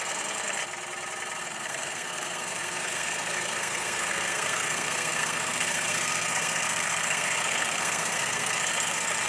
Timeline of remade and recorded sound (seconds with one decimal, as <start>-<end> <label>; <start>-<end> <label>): 0.0-0.6 remade; 0.6-1.4 recorded; 1.4-9.3 remade